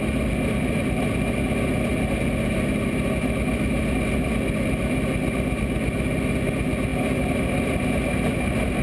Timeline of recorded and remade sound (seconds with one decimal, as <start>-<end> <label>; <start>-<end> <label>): 0.0-8.8 recorded